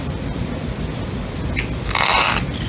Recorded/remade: recorded